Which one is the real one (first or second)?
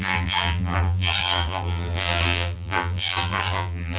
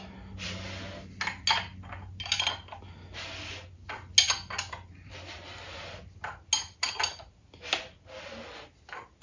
second